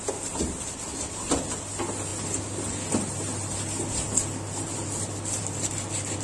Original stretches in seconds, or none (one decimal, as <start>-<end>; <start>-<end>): 0.0-6.2